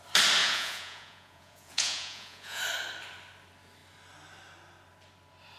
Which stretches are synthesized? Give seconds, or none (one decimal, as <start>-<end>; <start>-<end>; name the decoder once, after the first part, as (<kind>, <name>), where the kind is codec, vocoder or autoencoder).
0.4-2.6 (vocoder, Vocos)